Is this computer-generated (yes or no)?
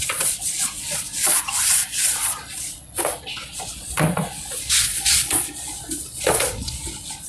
yes